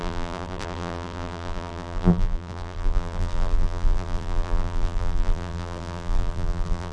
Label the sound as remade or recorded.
remade